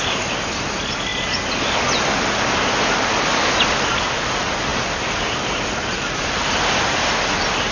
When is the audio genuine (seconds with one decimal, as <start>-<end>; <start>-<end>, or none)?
0.0-7.7